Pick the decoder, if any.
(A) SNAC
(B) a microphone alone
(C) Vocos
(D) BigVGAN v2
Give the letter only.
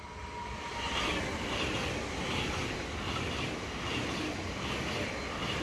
B